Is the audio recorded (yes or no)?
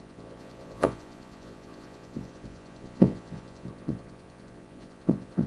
no